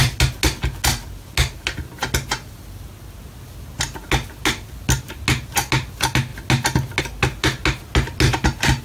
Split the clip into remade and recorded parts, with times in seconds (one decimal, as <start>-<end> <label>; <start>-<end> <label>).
0.0-8.8 recorded

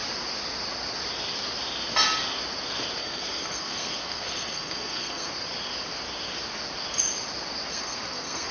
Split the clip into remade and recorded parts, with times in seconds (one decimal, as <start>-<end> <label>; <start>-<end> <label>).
0.0-3.0 recorded; 3.0-5.3 remade; 5.3-7.7 recorded; 7.7-8.5 remade